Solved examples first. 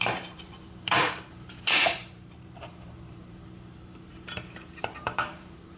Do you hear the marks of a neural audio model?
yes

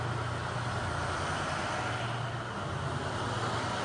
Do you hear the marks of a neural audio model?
no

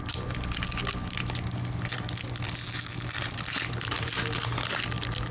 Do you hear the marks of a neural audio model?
no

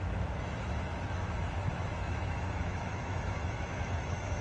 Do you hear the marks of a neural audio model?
yes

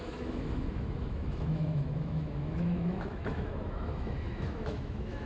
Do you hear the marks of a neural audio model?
yes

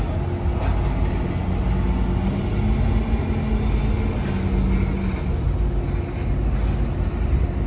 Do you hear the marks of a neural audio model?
no